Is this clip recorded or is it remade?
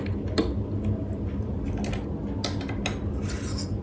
recorded